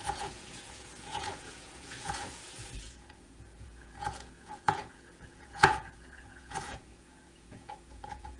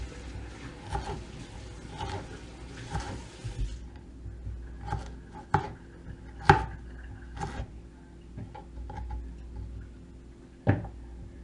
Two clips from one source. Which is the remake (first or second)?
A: first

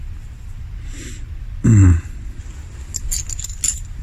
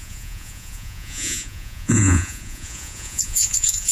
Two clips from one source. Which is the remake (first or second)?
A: second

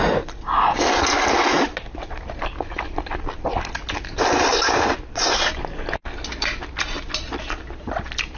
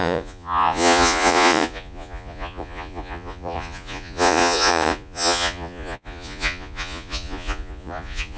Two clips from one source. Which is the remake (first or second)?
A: second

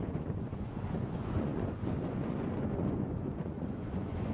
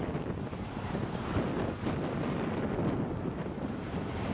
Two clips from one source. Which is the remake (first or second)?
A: first